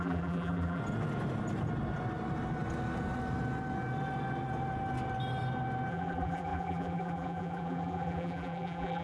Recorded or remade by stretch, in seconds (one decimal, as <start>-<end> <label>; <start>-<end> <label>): 0.0-0.8 remade; 0.8-5.9 recorded; 5.9-9.0 remade